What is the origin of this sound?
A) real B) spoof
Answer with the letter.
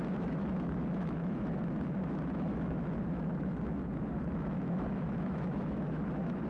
B